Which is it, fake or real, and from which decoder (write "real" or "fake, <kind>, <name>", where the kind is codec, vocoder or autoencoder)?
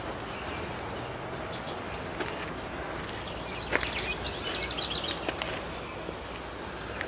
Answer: real